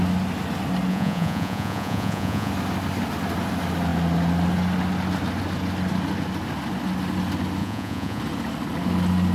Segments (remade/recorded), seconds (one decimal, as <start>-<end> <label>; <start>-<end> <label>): 0.0-0.9 recorded; 0.9-2.5 remade; 2.5-7.6 recorded; 7.6-8.2 remade; 8.2-9.3 recorded